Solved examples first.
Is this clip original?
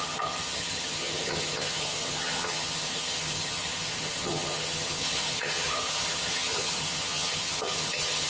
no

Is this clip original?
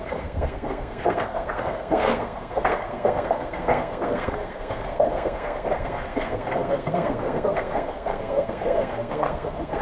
no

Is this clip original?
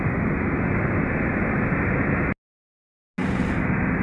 yes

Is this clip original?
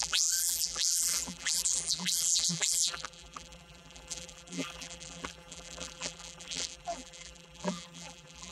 no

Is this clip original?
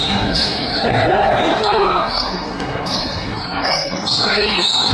no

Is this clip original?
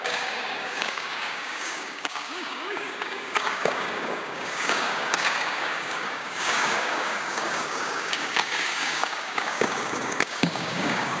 no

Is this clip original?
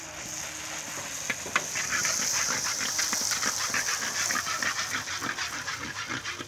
yes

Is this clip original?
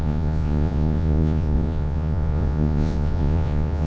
no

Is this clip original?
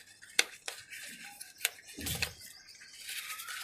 yes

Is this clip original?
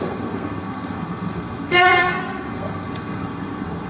no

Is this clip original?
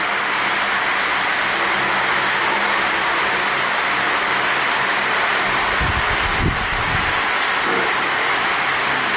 yes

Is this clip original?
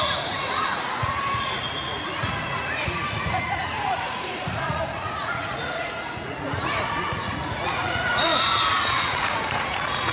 no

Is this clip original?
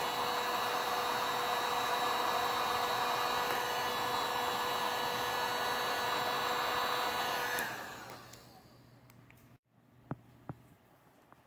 yes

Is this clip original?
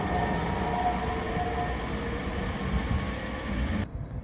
yes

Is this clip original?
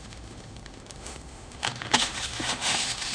no